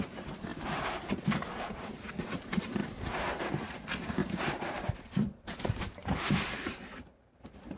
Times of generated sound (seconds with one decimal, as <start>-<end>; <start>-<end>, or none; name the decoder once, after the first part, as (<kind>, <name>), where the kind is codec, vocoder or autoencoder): 0.0-2.8 (vocoder, BigVGAN v2); 3.4-7.8